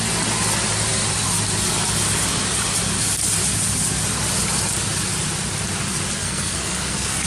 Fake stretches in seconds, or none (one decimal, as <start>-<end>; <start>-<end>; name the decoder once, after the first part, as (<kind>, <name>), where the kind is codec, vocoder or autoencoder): 6.2-7.3 (codec, SNAC)